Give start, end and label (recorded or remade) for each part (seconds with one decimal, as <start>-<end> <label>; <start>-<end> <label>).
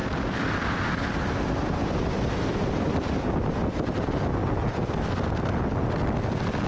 0.0-3.2 remade; 3.2-6.7 recorded